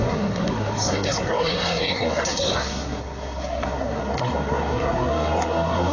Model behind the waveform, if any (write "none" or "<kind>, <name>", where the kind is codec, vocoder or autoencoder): codec, SNAC